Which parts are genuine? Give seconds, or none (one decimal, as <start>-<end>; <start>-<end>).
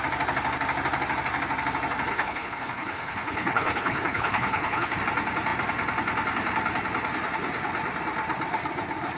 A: 0.0-2.1; 5.0-9.2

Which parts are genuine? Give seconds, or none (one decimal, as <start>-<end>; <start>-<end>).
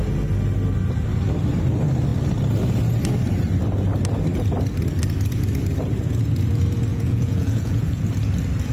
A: 0.0-6.9; 8.0-8.7